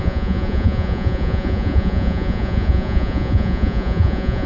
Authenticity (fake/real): fake